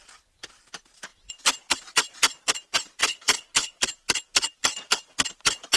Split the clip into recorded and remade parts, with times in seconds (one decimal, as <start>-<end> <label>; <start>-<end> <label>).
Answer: 0.0-3.0 recorded; 3.0-3.8 remade; 3.8-5.8 recorded

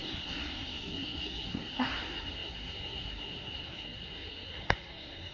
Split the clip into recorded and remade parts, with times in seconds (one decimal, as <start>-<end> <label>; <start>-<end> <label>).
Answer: 0.0-5.3 remade

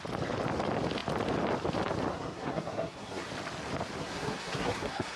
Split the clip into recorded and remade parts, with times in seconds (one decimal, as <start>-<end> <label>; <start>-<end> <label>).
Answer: 0.0-2.1 recorded; 2.1-3.3 remade; 3.3-4.0 recorded; 4.0-5.2 remade

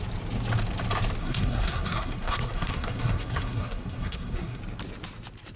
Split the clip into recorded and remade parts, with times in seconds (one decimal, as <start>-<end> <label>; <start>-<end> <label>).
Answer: 0.0-1.2 recorded; 1.2-4.6 remade; 4.6-5.6 recorded